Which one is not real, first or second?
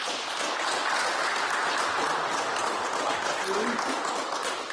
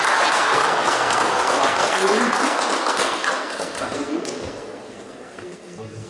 second